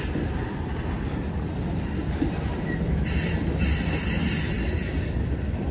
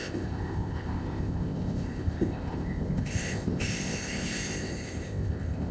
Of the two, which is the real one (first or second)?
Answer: first